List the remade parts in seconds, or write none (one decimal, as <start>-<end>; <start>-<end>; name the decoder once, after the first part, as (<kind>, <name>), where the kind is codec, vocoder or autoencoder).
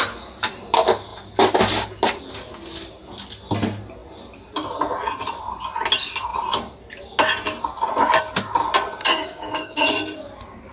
9.0-9.9 (codec, DAC)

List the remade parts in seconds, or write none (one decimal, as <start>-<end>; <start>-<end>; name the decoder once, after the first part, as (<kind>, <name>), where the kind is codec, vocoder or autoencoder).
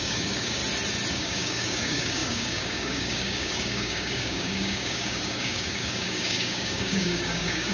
0.0-0.6 (codec, DAC); 1.1-7.7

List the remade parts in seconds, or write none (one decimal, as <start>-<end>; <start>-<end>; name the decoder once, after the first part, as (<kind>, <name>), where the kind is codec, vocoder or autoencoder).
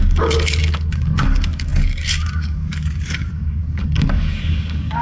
0.0-5.0 (codec, DAC)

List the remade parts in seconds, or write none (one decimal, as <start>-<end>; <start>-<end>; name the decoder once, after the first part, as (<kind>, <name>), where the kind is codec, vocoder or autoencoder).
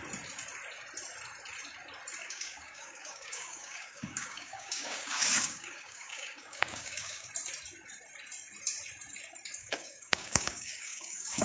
2.2-7.3 (codec, DAC); 9.6-11.4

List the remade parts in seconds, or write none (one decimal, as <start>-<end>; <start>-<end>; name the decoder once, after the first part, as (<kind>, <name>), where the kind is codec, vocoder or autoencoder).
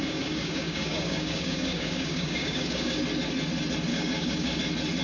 0.0-3.0 (codec, DAC); 3.9-4.6